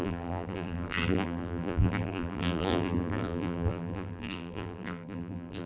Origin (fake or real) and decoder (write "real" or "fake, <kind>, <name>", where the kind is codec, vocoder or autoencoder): fake, vocoder, BigVGAN v2